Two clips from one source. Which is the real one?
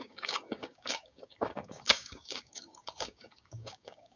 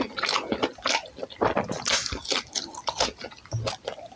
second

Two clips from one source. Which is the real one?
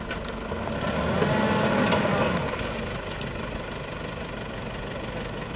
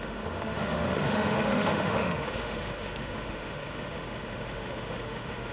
first